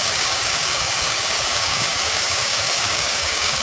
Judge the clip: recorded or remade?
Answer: remade